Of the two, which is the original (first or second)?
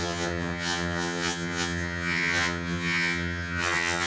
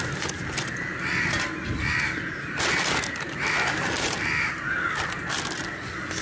second